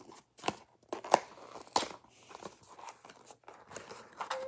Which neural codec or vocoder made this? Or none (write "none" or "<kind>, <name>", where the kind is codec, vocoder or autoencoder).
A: none